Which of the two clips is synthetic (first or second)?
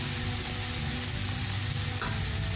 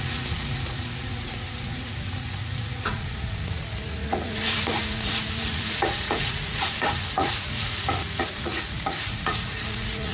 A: second